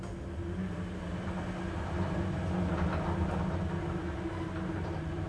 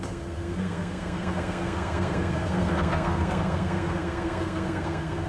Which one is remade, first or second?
second